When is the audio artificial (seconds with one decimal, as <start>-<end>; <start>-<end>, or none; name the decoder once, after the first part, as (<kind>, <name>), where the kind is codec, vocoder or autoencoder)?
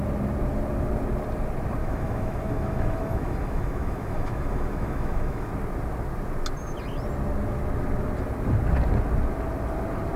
1.8-5.5 (autoencoder, DAC-VAE)